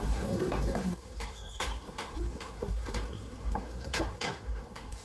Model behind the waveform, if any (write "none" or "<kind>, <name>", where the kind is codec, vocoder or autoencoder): codec, SNAC